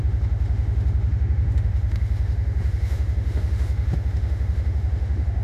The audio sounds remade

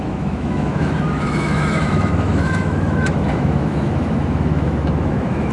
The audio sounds remade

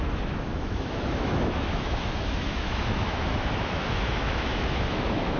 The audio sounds remade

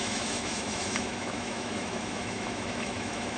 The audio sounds remade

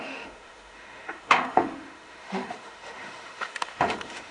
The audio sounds remade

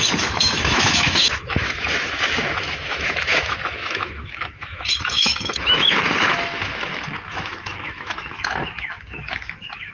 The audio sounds remade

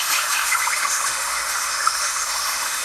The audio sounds remade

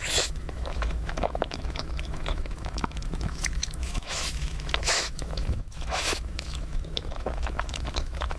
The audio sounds remade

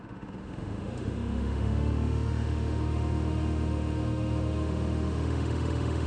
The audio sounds remade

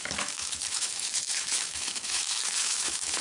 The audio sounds remade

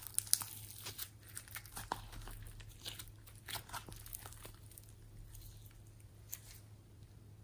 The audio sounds recorded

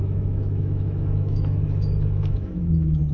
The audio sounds remade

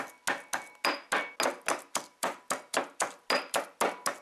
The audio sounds recorded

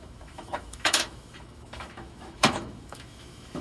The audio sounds remade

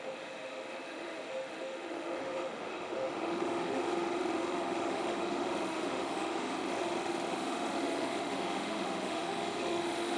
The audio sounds remade